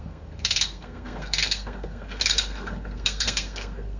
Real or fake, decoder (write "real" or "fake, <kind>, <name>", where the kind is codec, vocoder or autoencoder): fake, codec, SNAC